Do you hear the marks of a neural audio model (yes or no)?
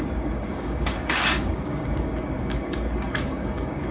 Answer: yes